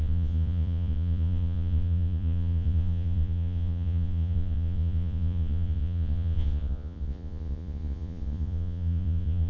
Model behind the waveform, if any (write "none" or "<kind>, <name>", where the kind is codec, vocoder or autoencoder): vocoder, Vocos